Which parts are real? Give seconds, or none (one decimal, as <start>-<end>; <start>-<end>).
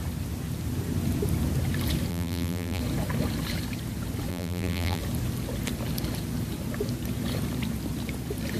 0.0-2.1; 2.8-4.3; 5.0-8.6